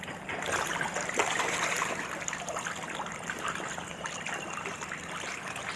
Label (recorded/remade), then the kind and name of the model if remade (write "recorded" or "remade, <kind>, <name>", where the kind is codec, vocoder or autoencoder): recorded